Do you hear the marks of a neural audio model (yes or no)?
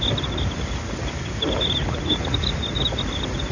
no